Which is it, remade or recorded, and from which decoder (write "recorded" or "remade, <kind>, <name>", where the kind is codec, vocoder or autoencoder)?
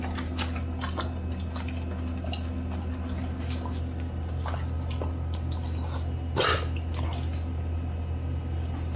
recorded